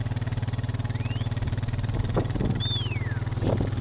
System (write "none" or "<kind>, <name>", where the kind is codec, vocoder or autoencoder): none